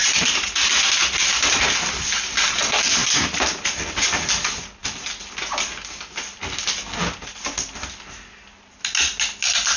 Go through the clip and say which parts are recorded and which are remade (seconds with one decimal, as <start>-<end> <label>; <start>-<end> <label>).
0.0-3.0 recorded; 3.0-3.8 remade; 3.8-9.8 recorded